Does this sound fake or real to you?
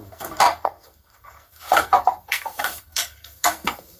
fake